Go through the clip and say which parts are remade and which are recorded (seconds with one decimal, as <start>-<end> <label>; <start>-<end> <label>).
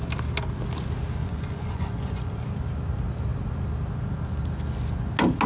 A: 0.0-1.2 recorded; 1.2-2.4 remade; 2.4-5.5 recorded